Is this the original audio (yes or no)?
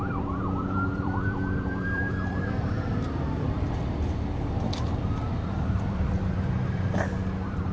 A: no